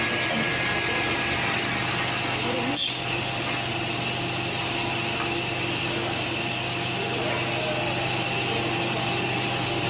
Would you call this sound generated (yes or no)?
no